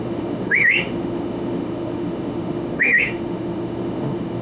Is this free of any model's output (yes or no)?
no